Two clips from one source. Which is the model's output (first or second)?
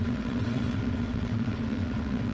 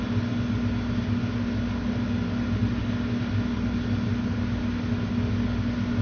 first